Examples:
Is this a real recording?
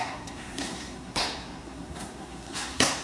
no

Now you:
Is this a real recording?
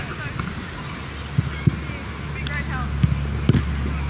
yes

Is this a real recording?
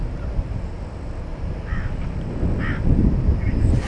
yes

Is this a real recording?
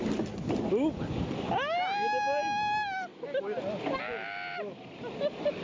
yes